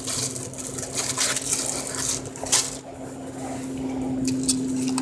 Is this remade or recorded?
recorded